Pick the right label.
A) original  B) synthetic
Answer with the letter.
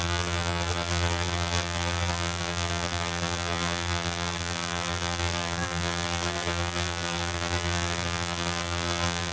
B